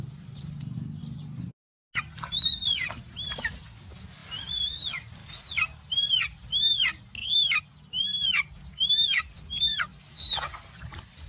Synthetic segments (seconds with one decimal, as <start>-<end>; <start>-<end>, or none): none